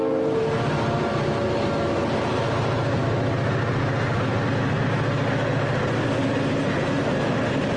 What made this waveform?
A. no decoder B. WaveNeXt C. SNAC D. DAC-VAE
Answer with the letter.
A